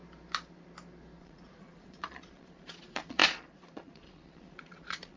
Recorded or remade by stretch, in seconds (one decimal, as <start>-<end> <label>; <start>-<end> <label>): 0.0-1.2 recorded; 1.2-5.2 remade